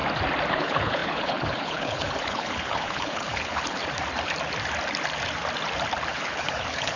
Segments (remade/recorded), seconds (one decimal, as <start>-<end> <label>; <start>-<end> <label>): 0.0-0.5 recorded; 0.5-3.8 remade; 3.8-6.1 recorded; 6.1-7.0 remade